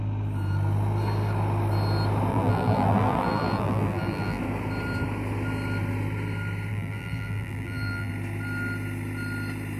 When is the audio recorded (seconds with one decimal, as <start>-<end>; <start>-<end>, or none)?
0.0-2.3; 4.4-6.7; 8.1-9.8